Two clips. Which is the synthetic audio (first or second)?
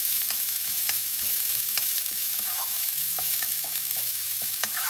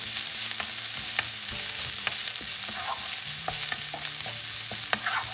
first